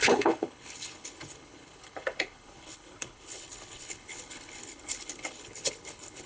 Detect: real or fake fake